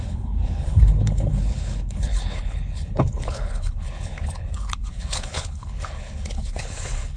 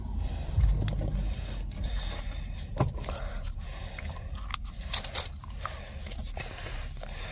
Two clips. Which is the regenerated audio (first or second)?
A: first